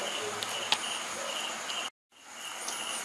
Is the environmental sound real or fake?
real